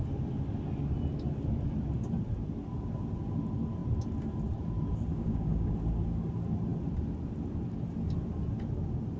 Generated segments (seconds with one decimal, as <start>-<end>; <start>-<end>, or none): 5.1-5.7